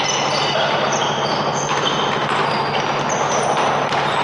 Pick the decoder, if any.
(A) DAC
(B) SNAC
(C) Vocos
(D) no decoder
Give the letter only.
D